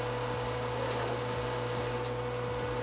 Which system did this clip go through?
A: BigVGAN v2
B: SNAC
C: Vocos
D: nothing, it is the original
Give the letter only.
D